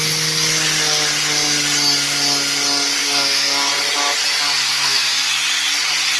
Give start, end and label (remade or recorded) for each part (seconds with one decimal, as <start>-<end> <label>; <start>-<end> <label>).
0.0-3.0 recorded; 3.0-3.7 remade; 3.7-4.7 recorded; 4.7-5.2 remade; 5.2-6.2 recorded